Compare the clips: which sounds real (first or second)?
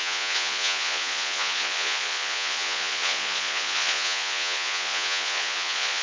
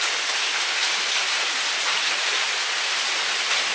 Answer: second